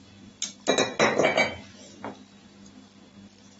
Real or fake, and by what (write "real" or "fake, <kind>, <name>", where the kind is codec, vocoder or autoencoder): real